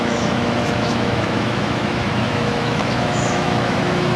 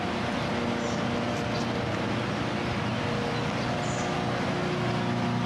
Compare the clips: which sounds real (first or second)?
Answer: second